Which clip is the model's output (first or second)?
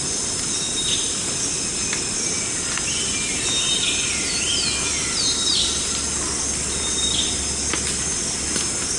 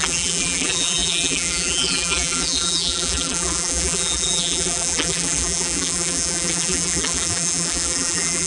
second